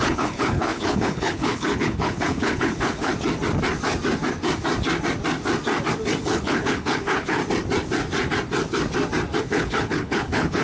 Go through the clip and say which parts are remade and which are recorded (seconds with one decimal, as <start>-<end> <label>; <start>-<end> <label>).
0.0-3.1 remade; 3.1-6.2 recorded; 6.2-7.4 remade; 7.4-9.4 recorded; 9.4-10.6 remade